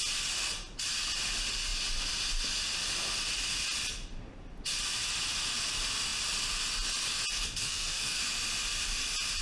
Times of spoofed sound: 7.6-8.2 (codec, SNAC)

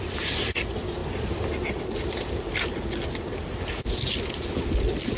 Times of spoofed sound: none

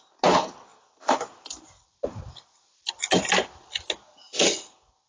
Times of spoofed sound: 0.7-2.9 (vocoder, BigVGAN v2); 4.3-5.1

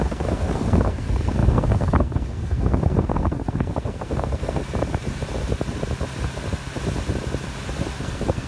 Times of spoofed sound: 0.0-4.6 (codec, SNAC); 8.0-8.5

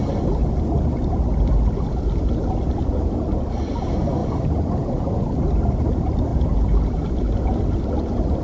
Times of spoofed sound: 4.2-5.2 (vocoder, BigVGAN v2)

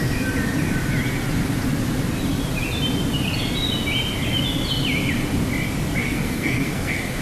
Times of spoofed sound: 6.0-7.2 (codec, SNAC)